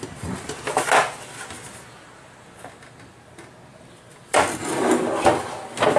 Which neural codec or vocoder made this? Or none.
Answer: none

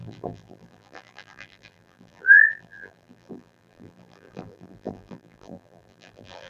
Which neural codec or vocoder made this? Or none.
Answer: vocoder, BigVGAN v2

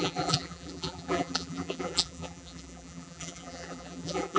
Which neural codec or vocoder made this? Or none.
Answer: vocoder, BigVGAN v2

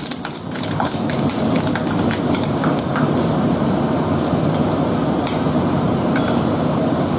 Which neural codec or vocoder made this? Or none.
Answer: vocoder, BigVGAN v2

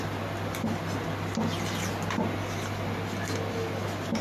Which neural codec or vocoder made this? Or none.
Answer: none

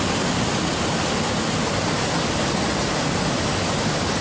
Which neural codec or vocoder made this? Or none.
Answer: none